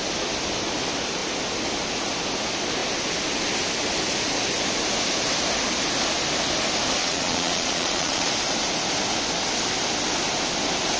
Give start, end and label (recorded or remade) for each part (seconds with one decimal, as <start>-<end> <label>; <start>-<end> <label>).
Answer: 0.0-7.0 recorded; 7.0-8.3 remade; 8.3-11.0 recorded